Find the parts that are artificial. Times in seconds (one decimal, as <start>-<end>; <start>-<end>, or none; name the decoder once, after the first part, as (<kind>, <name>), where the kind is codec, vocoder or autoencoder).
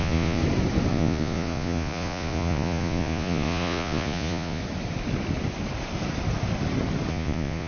0.0-0.4 (vocoder, Vocos); 0.9-4.6; 7.1-7.7